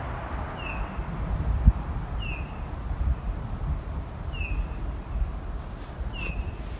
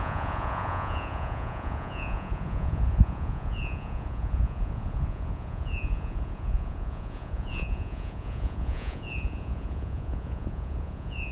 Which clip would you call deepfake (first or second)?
second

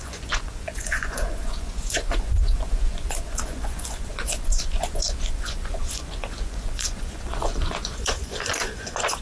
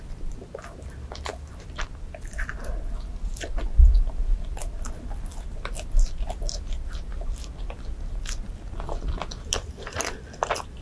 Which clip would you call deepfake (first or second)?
first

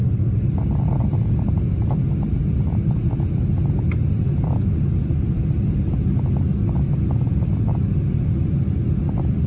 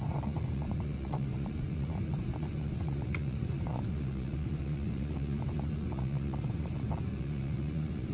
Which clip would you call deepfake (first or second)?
second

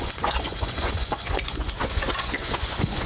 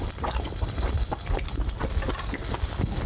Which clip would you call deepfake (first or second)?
first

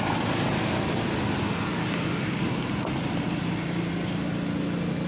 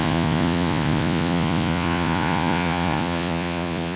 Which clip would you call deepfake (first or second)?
second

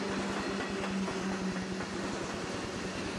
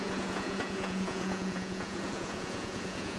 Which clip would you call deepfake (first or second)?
second